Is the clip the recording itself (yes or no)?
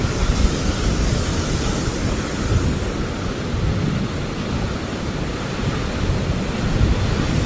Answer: yes